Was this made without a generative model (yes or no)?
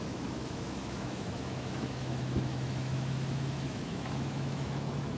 no